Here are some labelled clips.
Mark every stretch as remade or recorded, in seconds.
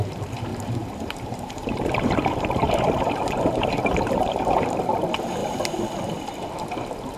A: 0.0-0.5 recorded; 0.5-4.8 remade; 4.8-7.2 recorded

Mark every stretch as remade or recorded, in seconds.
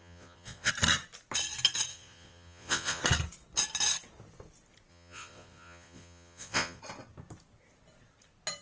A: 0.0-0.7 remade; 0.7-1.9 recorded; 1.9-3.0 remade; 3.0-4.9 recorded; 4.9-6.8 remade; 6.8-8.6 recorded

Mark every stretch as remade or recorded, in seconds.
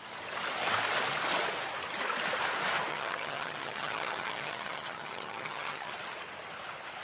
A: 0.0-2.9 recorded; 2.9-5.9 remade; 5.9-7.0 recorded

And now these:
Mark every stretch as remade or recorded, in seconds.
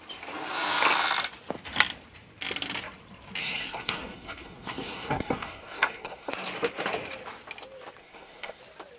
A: 0.0-3.4 recorded; 3.4-6.3 remade; 6.3-8.0 recorded; 8.0-8.6 remade; 8.6-9.0 recorded